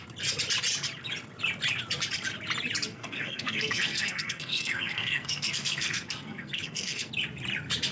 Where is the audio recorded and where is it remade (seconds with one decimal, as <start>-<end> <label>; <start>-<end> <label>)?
0.0-2.9 recorded; 2.9-7.1 remade; 7.1-7.9 recorded